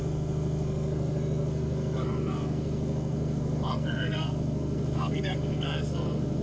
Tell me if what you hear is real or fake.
fake